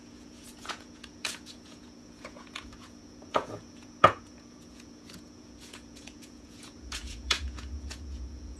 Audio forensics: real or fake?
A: fake